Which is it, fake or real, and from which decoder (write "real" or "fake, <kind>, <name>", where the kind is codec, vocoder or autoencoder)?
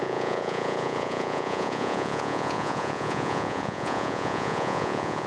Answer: fake, vocoder, Vocos